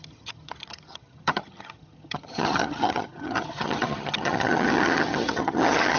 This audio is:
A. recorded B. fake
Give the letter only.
B